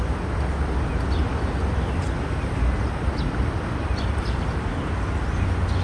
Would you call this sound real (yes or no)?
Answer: yes